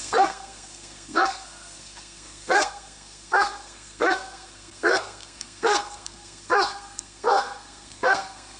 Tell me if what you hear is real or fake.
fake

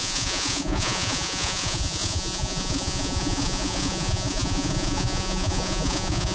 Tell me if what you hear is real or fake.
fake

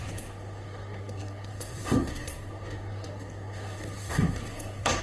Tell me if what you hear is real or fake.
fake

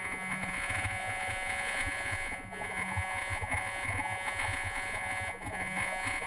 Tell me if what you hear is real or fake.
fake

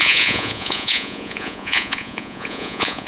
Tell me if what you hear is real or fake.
fake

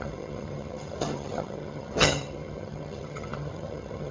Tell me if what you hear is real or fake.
fake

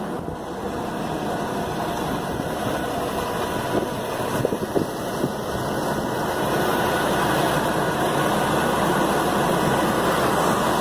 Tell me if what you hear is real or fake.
real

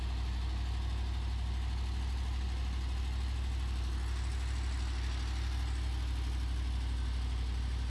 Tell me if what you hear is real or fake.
real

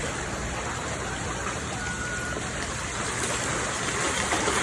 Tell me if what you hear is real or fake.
real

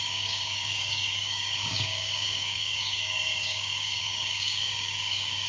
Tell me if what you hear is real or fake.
fake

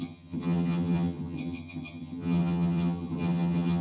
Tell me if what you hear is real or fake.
fake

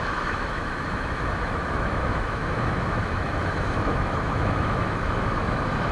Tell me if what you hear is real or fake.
fake